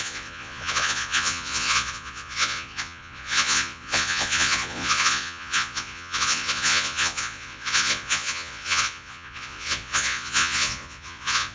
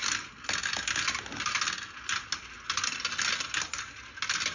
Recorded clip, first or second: second